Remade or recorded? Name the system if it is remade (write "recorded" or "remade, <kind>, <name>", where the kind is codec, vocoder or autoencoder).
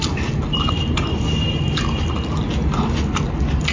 recorded